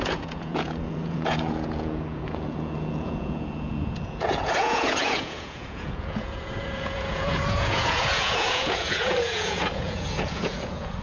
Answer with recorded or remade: remade